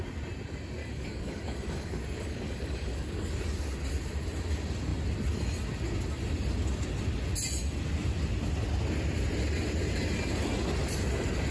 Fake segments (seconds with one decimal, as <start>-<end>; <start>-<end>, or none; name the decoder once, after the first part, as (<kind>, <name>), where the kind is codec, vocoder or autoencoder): 0.8-3.3 (codec, DAC)